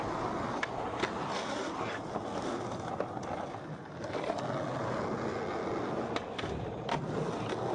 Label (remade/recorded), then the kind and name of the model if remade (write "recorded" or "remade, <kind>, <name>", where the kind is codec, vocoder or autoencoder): recorded